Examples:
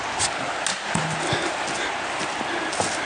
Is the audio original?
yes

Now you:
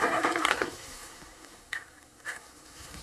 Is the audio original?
no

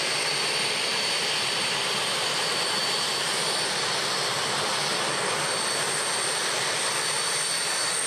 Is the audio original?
yes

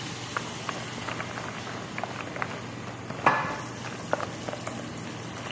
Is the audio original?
yes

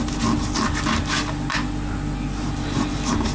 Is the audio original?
yes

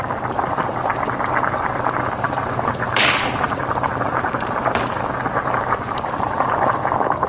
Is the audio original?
yes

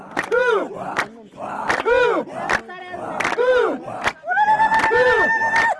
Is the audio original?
yes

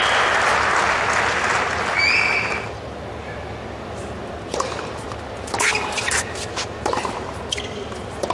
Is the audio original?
yes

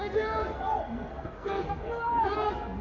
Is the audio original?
no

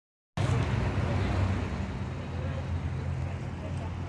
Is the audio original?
yes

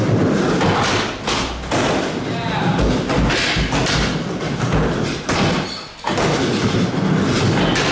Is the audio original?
yes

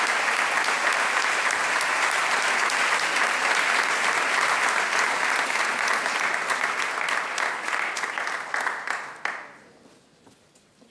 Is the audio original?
yes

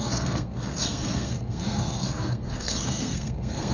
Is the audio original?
no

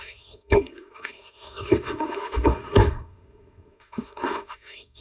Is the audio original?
no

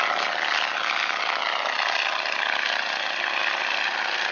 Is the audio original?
yes